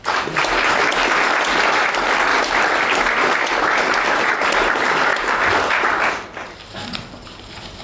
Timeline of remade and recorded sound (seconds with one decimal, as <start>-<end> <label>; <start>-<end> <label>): 0.0-7.8 recorded